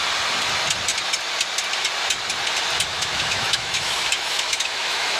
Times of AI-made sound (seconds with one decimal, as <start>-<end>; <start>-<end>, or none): 2.9-5.2